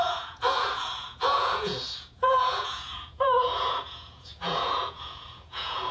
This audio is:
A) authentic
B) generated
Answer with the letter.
B